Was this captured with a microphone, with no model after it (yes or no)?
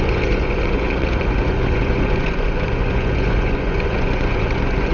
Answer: no